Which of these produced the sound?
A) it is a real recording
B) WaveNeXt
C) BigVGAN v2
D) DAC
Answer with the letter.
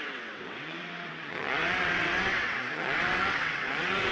B